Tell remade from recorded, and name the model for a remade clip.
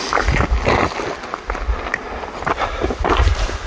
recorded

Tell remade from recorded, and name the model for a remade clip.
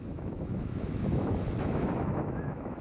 remade, autoencoder, DAC-VAE